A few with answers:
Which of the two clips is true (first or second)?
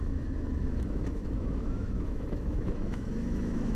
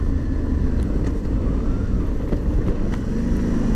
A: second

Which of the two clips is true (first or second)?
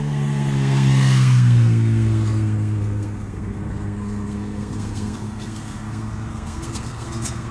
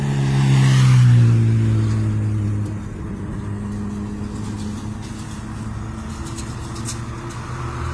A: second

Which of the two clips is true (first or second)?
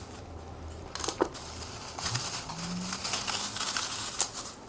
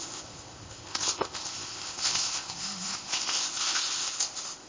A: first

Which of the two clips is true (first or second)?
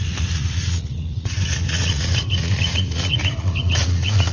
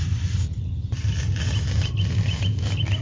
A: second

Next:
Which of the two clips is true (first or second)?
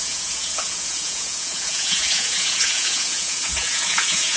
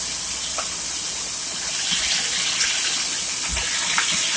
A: second